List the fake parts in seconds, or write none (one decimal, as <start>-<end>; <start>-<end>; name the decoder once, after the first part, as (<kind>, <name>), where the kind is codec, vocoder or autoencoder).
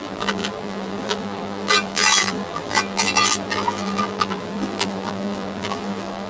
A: 0.0-6.3 (vocoder, BigVGAN v2)